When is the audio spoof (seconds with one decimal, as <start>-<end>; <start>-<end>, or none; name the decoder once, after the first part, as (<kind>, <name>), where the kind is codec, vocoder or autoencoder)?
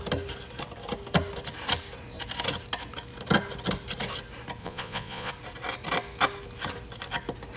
4.6-5.3 (vocoder, Vocos)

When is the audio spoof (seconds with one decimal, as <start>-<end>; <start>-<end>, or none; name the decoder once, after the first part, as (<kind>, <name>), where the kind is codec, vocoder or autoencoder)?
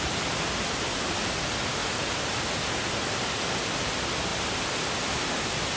none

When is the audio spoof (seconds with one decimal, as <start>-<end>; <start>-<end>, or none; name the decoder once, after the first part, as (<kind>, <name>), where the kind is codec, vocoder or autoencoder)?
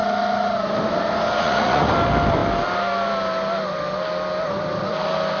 1.4-1.9 (vocoder, Vocos)